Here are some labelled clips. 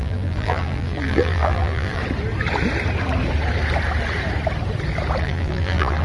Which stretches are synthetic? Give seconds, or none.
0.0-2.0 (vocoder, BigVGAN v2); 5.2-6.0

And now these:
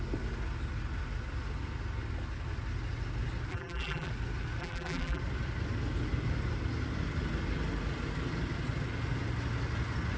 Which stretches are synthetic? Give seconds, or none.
3.5-4.1 (vocoder, BigVGAN v2); 4.6-5.2